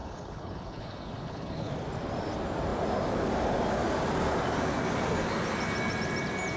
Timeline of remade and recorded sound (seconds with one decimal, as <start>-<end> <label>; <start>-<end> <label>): 0.0-1.7 remade; 1.7-6.6 recorded